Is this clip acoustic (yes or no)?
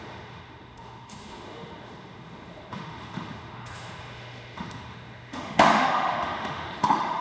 no